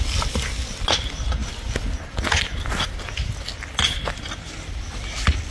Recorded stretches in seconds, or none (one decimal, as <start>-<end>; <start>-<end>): 0.0-5.5